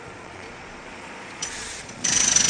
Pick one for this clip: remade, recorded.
remade